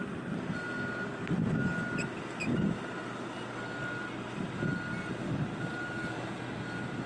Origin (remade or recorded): recorded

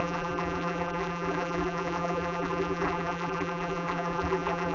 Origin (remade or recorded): remade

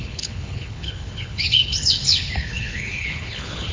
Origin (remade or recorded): remade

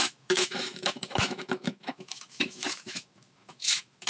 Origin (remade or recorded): remade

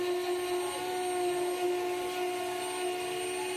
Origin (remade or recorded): recorded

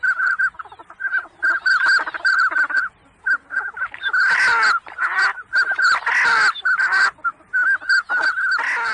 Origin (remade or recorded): recorded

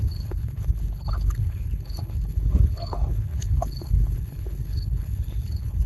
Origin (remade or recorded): remade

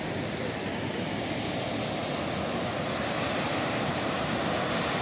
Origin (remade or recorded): recorded